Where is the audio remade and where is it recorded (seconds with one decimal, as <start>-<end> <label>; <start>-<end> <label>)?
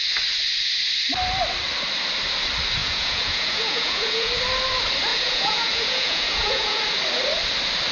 0.0-2.8 recorded; 2.8-4.3 remade; 4.3-5.1 recorded; 5.1-6.8 remade; 6.8-7.9 recorded